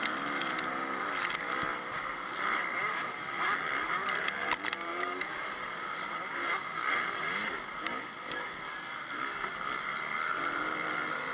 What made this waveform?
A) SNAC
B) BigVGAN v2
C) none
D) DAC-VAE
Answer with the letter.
C